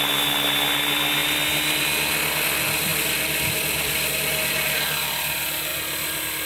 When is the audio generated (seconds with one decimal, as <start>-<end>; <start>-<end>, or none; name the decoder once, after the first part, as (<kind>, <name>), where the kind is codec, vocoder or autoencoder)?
1.2-1.8 (vocoder, BigVGAN v2); 2.9-4.1